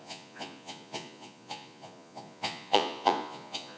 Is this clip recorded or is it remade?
remade